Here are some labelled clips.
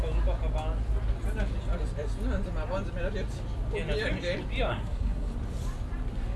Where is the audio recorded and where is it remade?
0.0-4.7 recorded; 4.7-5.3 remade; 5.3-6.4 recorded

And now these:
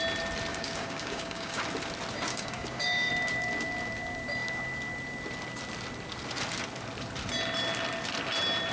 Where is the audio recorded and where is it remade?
0.0-0.5 recorded; 0.5-1.6 remade; 1.6-2.3 recorded; 2.3-3.1 remade; 3.1-8.7 recorded